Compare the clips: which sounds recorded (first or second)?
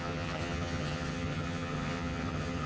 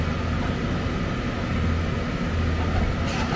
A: second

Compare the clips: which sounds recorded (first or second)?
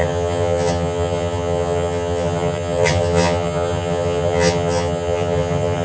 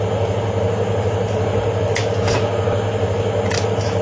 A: second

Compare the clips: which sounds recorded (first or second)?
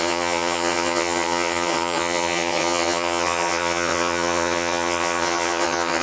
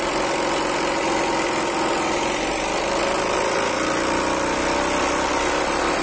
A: second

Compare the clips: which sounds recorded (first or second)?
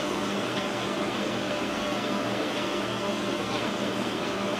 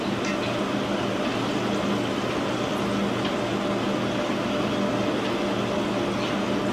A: second